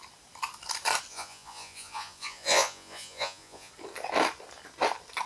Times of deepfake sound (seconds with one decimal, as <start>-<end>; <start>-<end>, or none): 1.1-3.7